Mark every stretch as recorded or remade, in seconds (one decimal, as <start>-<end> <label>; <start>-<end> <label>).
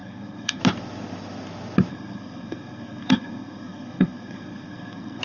0.0-0.6 remade; 0.6-1.9 recorded; 1.9-5.2 remade